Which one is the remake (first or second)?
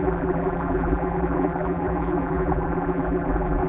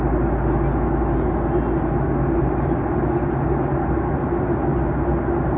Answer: first